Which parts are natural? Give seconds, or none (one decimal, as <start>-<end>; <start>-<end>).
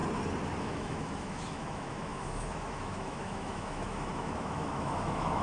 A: 0.0-0.6